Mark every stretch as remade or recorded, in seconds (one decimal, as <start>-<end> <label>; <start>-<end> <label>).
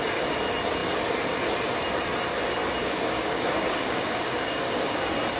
0.0-2.8 recorded; 2.8-5.0 remade; 5.0-5.4 recorded